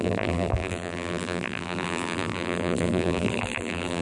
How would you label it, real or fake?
fake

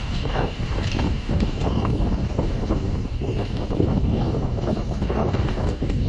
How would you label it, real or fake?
fake